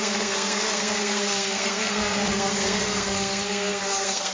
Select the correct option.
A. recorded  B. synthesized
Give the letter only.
B